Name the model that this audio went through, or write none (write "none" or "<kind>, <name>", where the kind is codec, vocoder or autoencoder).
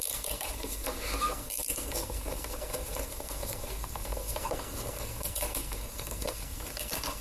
codec, SNAC